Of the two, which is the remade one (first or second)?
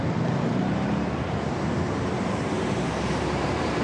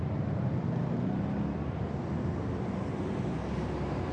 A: first